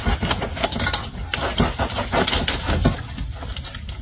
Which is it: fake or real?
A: real